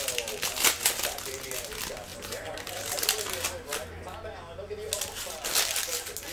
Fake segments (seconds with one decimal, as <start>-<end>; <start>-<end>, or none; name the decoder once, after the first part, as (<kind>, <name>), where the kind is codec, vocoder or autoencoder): 2.1-3.0 (vocoder, BigVGAN v2)